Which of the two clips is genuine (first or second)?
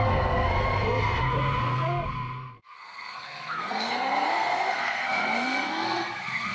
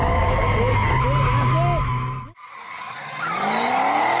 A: second